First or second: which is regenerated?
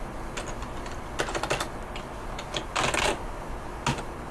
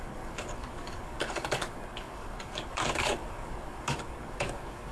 second